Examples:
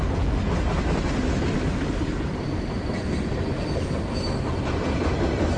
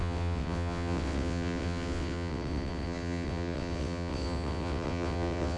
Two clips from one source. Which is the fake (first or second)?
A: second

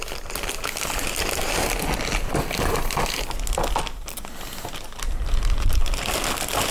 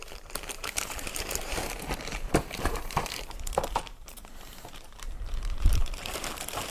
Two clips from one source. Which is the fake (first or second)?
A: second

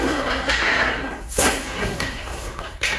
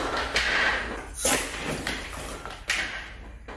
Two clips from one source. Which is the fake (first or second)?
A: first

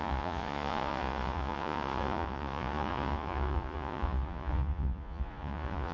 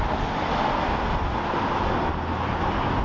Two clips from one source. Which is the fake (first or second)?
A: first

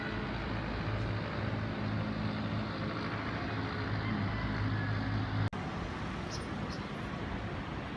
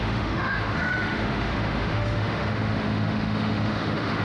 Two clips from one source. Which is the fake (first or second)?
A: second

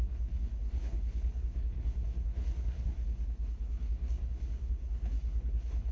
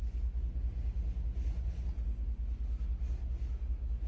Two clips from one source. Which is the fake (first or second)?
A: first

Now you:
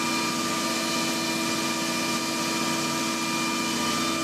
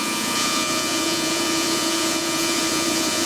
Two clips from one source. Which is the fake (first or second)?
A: second